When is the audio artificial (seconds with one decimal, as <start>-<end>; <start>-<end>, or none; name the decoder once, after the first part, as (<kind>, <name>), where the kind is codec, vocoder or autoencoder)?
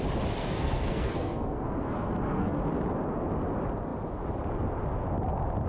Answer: 0.4-2.6 (codec, SNAC)